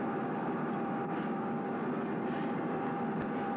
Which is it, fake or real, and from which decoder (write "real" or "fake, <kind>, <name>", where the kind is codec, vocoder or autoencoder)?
real